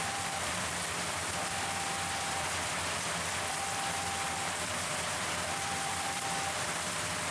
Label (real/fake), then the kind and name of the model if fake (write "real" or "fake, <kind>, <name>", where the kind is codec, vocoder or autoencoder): fake, vocoder, BigVGAN v2